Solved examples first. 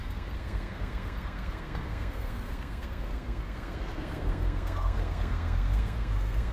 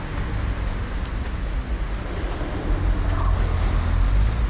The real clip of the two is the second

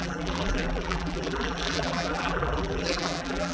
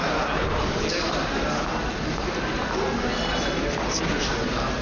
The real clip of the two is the second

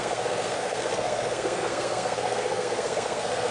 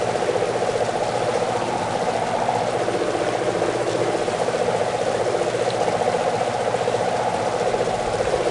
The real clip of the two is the second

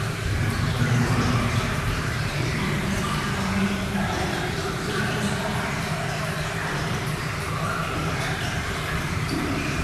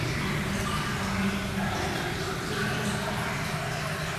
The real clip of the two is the second